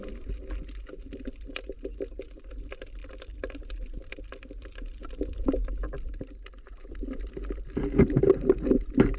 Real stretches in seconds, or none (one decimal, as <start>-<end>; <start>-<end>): 0.0-9.2